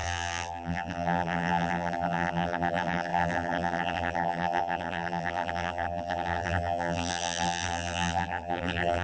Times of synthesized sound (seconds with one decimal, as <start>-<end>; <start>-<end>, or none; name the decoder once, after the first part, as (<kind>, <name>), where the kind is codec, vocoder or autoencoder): 0.0-9.0 (vocoder, BigVGAN v2)